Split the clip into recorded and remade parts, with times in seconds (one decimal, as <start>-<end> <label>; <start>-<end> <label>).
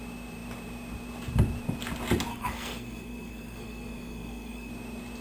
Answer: 0.0-2.3 recorded; 2.3-4.7 remade; 4.7-5.2 recorded